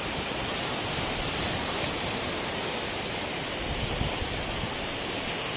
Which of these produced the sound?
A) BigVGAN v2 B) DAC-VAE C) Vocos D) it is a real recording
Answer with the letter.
A